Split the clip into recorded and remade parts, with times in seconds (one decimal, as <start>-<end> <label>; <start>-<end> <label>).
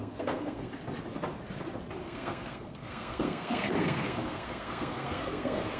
0.0-0.7 remade; 0.7-2.0 recorded; 2.0-5.8 remade